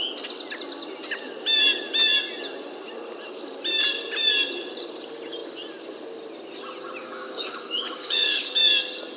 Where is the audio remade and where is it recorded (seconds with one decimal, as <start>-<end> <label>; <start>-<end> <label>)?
0.0-7.0 recorded; 7.0-8.6 remade; 8.6-9.2 recorded